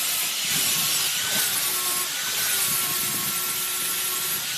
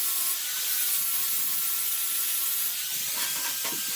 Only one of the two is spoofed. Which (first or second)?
second